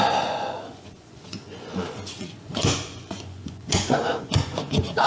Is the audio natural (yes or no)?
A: no